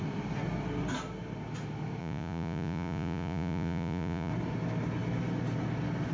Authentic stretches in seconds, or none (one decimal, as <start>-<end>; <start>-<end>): 0.0-2.0; 4.3-6.1